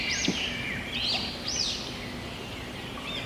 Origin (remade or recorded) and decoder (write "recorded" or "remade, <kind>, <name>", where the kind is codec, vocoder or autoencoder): remade, vocoder, BigVGAN v2